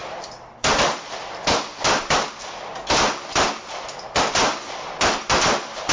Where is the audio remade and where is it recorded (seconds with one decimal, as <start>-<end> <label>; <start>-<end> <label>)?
0.0-5.9 remade